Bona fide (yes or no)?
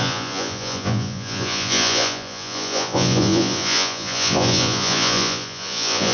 no